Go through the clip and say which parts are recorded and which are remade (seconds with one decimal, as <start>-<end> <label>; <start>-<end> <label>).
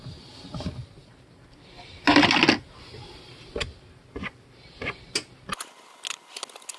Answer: 0.0-6.8 recorded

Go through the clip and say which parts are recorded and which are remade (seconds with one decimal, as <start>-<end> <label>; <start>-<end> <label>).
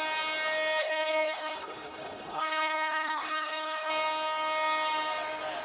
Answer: 0.0-0.8 recorded; 0.8-3.9 remade; 3.9-5.6 recorded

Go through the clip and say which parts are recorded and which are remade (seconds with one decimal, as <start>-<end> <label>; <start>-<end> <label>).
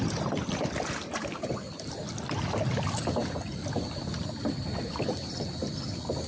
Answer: 0.0-6.3 recorded